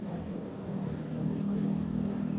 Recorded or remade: remade